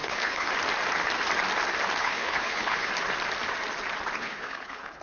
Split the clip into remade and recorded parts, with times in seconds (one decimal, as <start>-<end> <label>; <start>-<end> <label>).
0.0-0.5 remade; 0.5-2.0 recorded; 2.0-2.9 remade; 2.9-4.2 recorded; 4.2-5.0 remade